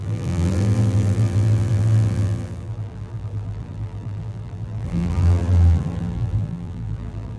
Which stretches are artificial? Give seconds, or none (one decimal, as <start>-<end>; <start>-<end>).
0.0-7.4

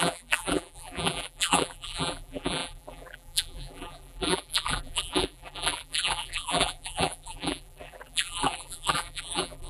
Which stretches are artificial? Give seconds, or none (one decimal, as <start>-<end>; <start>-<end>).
0.0-9.7